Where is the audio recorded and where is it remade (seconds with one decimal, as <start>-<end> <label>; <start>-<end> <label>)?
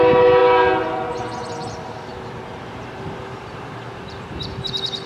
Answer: 0.0-5.1 recorded